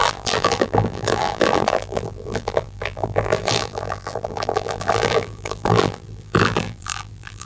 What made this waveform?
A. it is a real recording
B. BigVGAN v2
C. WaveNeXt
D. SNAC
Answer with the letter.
B